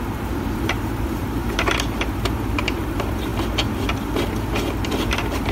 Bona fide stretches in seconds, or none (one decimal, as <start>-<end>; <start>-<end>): 3.3-5.0

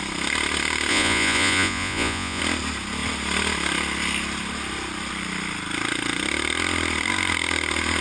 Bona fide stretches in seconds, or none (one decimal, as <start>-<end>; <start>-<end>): 0.0-0.9; 2.4-8.0

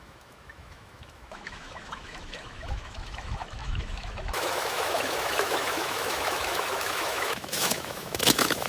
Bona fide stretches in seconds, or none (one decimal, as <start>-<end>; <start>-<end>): none

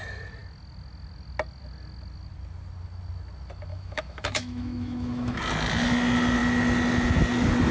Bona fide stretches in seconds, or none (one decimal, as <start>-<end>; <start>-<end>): 0.0-3.7; 5.4-7.7

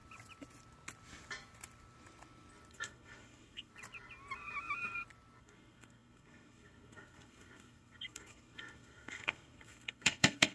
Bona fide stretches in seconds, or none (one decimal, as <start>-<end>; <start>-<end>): 0.0-2.7; 3.7-5.4

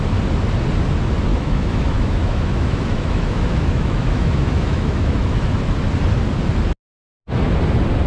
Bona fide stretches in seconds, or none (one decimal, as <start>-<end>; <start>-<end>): 0.0-1.3; 5.6-8.1

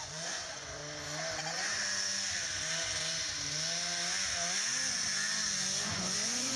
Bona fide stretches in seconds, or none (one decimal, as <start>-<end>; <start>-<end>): 0.8-1.4; 1.8-5.8

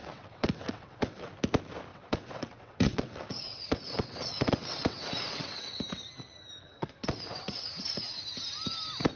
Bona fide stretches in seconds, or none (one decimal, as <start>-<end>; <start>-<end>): 1.3-1.9; 5.8-6.6; 8.2-9.2